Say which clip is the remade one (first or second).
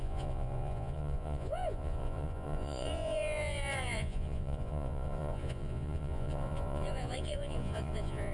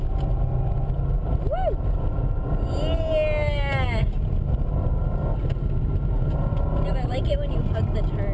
first